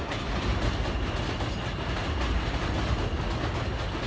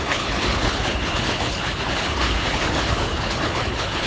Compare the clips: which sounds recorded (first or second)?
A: first